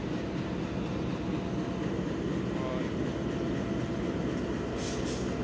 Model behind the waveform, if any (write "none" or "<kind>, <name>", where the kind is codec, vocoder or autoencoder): none